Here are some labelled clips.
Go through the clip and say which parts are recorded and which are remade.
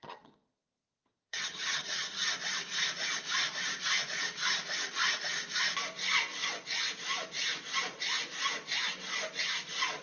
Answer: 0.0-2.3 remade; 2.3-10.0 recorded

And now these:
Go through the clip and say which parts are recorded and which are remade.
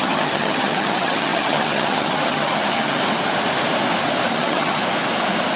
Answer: 0.0-3.0 remade; 3.0-4.3 recorded; 4.3-4.8 remade; 4.8-5.6 recorded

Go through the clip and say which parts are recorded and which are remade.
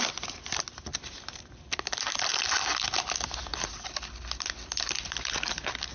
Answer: 0.0-5.9 recorded